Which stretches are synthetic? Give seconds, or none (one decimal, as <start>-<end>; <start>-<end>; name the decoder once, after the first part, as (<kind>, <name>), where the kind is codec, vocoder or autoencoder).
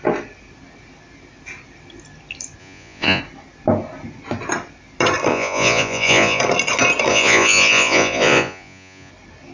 2.6-3.2 (vocoder, Vocos); 5.3-6.4; 7.1-9.1